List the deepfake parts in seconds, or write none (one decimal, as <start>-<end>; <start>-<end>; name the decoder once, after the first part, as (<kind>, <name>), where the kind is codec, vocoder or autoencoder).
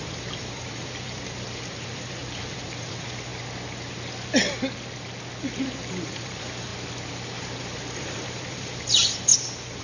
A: 0.0-3.3 (vocoder, BigVGAN v2); 5.4-6.7; 7.6-9.3